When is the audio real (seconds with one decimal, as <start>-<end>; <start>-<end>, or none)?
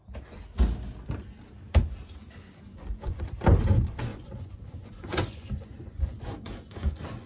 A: 0.0-2.7; 3.2-4.1